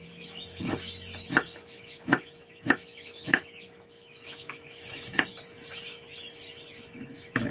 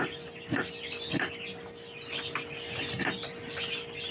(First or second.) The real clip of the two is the second